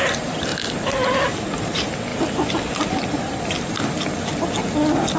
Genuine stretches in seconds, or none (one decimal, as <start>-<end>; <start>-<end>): 0.0-0.5; 1.1-2.1; 3.7-5.2